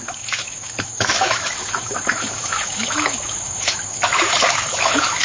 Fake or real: fake